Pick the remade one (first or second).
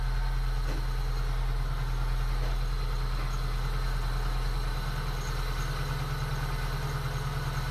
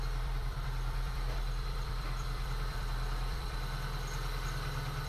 second